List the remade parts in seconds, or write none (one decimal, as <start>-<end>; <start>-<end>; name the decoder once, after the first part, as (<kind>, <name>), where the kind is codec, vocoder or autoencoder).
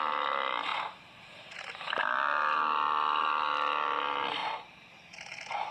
4.4-5.1 (vocoder, BigVGAN v2)